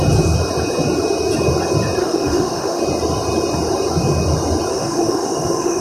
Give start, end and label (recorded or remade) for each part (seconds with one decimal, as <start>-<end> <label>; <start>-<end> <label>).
0.0-2.0 recorded; 2.0-2.8 remade; 2.8-4.7 recorded; 4.7-5.8 remade